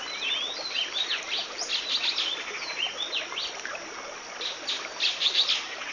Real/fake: real